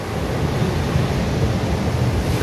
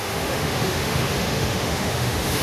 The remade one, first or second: second